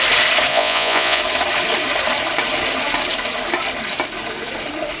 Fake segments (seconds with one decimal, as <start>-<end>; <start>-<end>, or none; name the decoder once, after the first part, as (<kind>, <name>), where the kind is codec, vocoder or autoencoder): 0.5-1.2 (vocoder, Vocos)